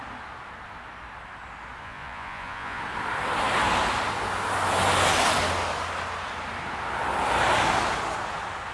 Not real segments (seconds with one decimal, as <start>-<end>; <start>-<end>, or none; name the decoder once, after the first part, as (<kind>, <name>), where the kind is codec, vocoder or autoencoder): 1.8-2.8 (vocoder, Vocos)